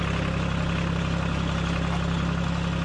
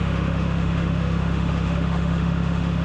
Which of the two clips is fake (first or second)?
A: second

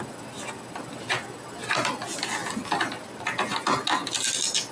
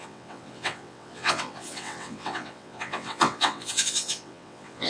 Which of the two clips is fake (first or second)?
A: second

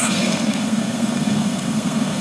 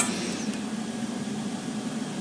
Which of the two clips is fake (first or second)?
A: first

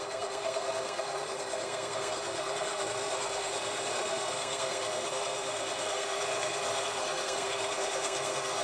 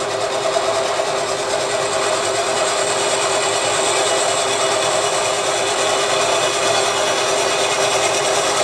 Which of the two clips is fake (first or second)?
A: first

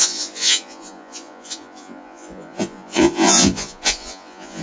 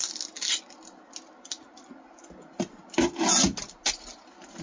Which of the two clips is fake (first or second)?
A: first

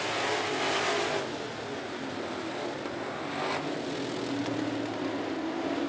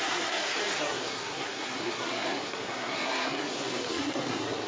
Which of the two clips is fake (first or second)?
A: second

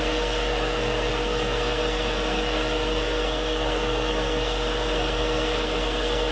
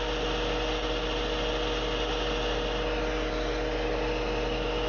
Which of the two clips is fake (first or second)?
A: first